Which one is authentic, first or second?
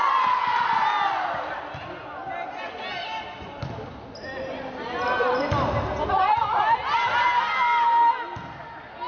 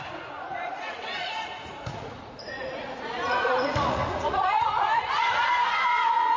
first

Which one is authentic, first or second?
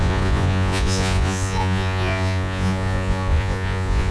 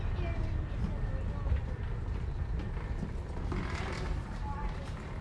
second